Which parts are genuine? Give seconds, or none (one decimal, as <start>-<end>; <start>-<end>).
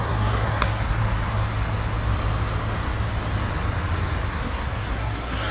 1.0-4.3